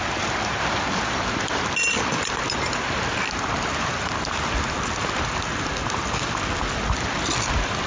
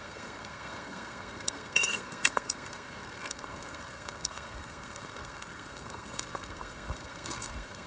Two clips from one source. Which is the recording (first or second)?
first